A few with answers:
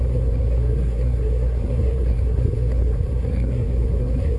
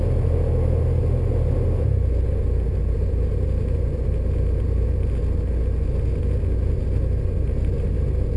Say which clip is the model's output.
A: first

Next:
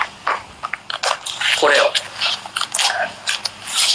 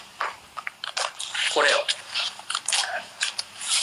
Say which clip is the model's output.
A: second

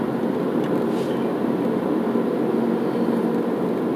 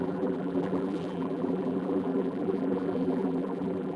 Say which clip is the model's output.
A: second